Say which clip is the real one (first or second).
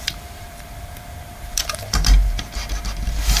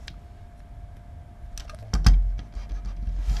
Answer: second